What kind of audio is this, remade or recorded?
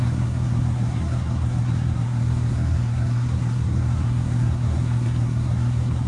remade